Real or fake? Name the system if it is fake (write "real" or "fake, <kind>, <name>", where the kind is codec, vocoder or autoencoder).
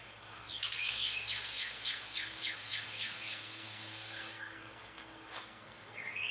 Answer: fake, codec, SNAC